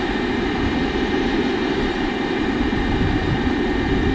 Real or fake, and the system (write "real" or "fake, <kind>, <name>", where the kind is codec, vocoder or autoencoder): fake, vocoder, BigVGAN v2